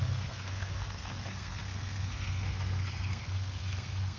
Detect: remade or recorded remade